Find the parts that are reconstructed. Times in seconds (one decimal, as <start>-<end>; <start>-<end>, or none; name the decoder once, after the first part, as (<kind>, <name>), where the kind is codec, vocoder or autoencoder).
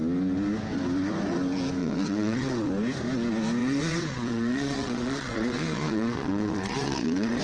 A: 1.8-2.7 (vocoder, WaveNeXt); 3.6-7.4